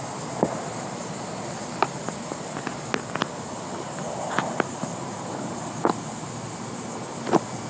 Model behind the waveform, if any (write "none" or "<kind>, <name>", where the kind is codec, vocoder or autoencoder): none